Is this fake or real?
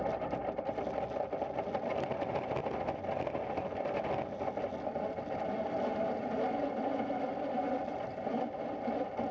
real